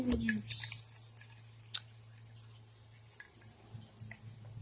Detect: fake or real real